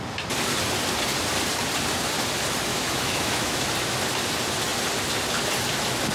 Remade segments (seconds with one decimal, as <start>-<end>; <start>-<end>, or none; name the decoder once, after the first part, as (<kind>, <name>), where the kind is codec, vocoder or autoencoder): 2.7-3.6 (autoencoder, DAC-VAE)